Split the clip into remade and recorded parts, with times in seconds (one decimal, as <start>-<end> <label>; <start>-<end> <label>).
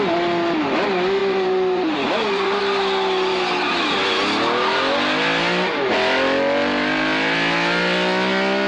0.0-1.2 recorded; 1.2-2.6 remade; 2.6-8.7 recorded